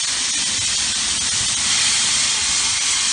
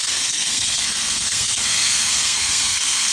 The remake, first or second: second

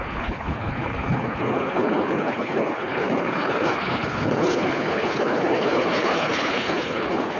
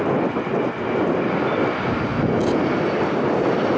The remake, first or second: first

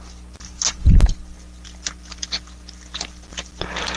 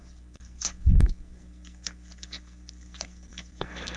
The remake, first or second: second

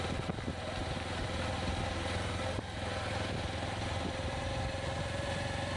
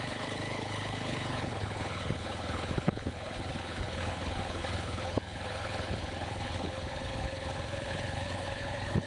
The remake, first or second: second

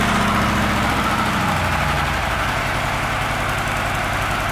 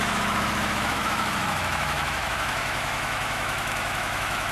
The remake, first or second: second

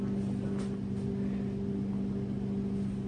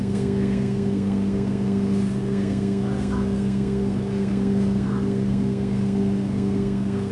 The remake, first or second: second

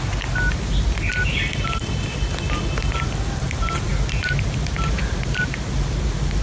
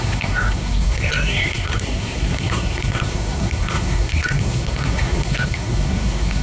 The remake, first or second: second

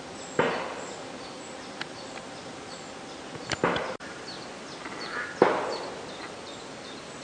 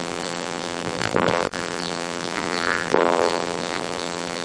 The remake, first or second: second